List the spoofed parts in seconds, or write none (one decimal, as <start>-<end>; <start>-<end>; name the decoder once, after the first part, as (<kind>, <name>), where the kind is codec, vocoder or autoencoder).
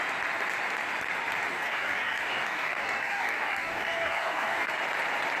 1.5-4.7 (codec, DAC)